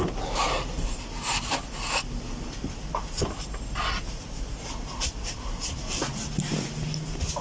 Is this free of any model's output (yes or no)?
yes